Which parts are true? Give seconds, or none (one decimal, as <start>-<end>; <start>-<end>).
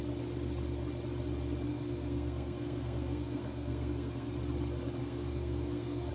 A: 0.0-1.7; 4.3-5.0